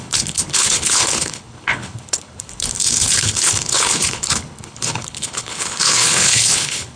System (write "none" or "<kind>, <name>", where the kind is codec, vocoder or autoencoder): codec, HILCodec